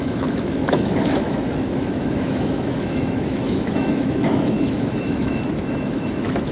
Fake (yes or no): yes